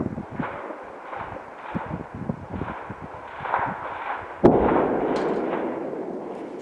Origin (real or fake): real